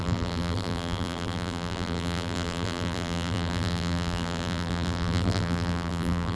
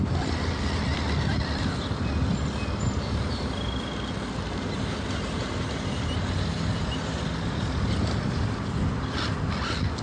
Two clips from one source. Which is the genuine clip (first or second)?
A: second